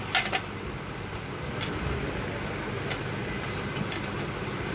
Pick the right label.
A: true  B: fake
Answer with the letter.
A